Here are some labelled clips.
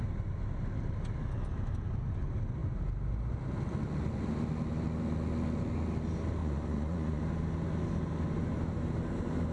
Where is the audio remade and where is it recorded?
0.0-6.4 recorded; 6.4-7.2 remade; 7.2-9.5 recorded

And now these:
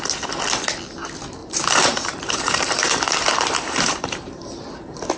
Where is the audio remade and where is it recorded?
0.0-1.4 recorded; 1.4-4.5 remade; 4.5-5.2 recorded

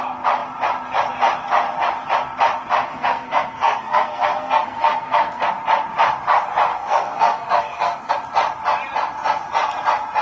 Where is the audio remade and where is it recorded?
0.0-2.9 recorded; 2.9-5.5 remade; 5.5-6.7 recorded; 6.7-8.1 remade; 8.1-10.2 recorded

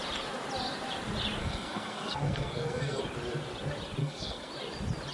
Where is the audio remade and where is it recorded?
0.0-1.4 recorded; 1.4-3.0 remade; 3.0-4.0 recorded; 4.0-4.5 remade; 4.5-5.1 recorded

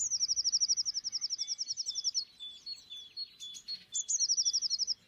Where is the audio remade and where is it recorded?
0.0-5.1 recorded

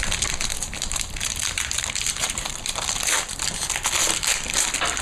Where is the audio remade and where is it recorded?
0.0-3.0 remade; 3.0-5.0 recorded